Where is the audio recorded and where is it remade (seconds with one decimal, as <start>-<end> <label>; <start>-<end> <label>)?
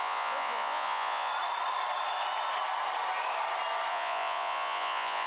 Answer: 0.0-1.3 remade; 1.3-3.9 recorded; 3.9-5.3 remade